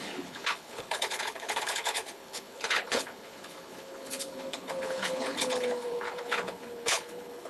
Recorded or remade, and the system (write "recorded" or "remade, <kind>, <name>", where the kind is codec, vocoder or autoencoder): remade, codec, HILCodec